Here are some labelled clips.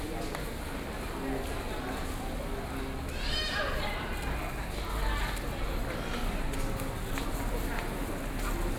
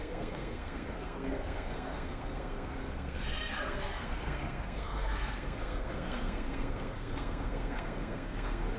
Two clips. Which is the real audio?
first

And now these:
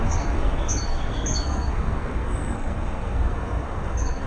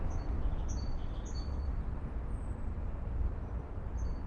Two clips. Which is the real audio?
second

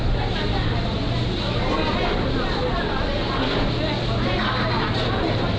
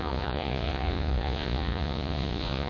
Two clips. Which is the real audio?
first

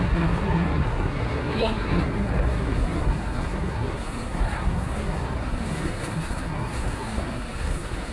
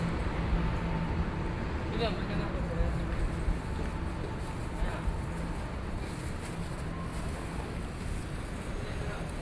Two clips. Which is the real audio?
second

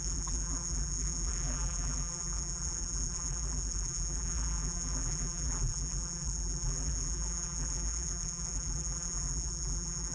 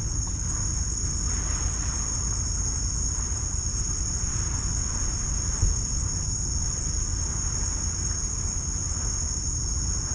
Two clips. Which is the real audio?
second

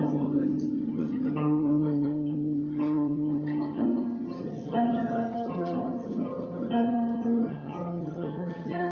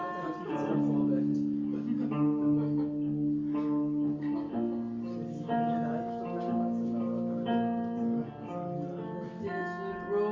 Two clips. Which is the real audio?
second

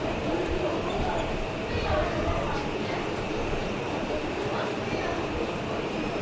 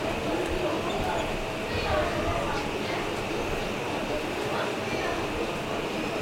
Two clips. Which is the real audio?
second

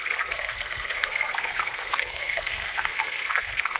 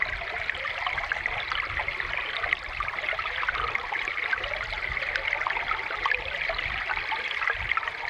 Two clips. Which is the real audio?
second